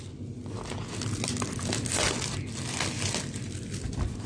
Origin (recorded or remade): recorded